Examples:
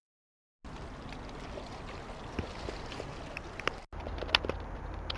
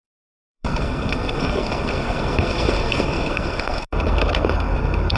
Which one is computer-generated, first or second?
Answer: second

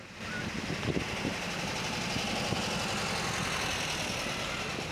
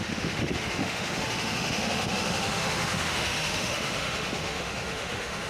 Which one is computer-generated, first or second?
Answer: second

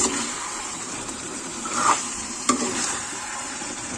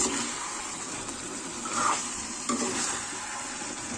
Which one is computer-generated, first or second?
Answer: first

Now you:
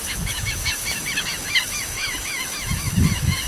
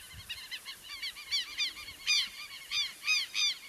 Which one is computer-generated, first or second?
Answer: first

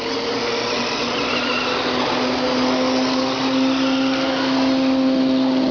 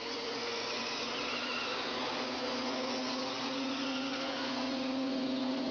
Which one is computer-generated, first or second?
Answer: second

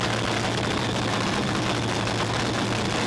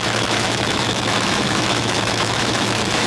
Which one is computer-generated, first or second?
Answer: second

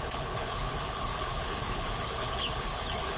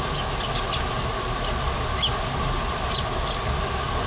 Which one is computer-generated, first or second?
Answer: first